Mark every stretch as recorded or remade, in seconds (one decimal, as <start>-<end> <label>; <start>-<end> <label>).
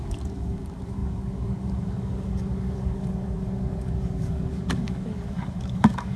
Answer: 0.0-6.2 remade